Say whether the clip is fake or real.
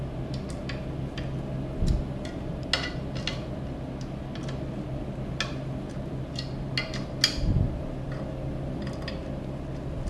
real